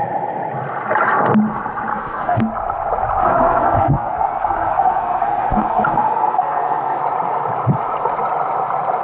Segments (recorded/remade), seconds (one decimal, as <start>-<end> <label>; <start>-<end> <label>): 0.0-1.9 recorded; 1.9-2.5 remade; 2.5-3.2 recorded; 3.2-7.0 remade; 7.0-9.0 recorded